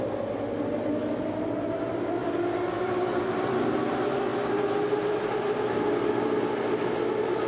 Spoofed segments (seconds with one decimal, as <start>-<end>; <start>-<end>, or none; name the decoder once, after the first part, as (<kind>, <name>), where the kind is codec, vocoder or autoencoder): none